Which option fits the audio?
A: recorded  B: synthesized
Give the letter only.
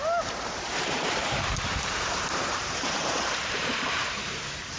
B